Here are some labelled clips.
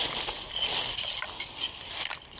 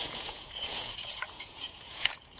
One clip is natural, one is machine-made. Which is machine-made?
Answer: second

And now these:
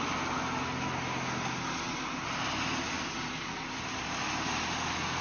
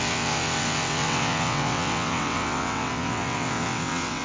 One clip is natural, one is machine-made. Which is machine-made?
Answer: second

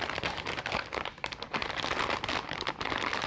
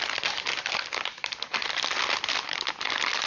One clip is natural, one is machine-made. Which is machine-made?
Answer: second